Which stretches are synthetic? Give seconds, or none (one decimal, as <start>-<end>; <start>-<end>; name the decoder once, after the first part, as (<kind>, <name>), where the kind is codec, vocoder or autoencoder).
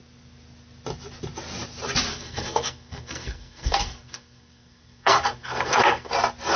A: 2.1-6.1 (codec, SNAC)